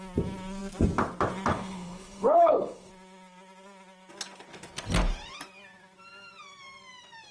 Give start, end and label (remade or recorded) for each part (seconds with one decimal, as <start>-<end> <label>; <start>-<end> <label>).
0.0-1.5 recorded; 1.5-2.9 remade; 2.9-7.3 recorded